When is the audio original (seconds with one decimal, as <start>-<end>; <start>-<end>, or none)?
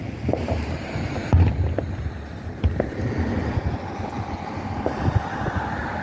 0.0-6.0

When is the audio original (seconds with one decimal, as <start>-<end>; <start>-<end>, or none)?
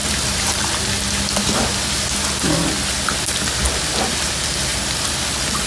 0.6-4.7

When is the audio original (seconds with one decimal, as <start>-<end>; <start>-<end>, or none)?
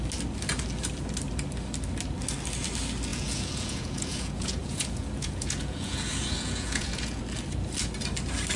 0.0-3.1; 7.2-8.6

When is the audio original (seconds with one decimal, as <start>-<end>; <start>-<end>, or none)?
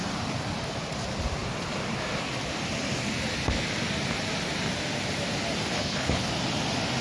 0.0-5.7; 6.3-7.0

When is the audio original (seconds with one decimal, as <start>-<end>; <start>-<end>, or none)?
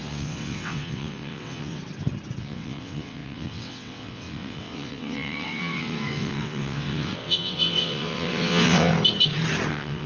1.8-2.4; 8.9-9.7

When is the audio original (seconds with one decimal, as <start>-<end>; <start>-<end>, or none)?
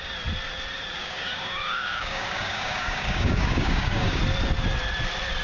0.0-1.0; 4.2-5.4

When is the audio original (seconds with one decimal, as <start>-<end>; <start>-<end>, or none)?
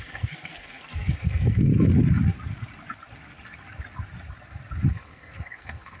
1.7-4.9